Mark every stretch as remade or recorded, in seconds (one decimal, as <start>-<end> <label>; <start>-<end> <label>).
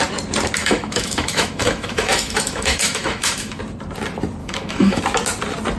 0.0-0.6 recorded; 0.6-3.6 remade; 3.6-4.4 recorded; 4.4-5.0 remade; 5.0-5.8 recorded